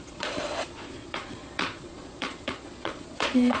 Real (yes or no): no